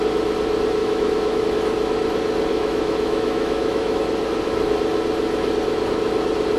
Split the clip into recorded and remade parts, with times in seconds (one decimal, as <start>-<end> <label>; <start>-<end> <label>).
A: 0.0-0.8 recorded; 0.8-1.4 remade; 1.4-2.5 recorded; 2.5-4.0 remade; 4.0-6.6 recorded